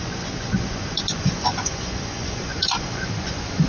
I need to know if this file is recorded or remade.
remade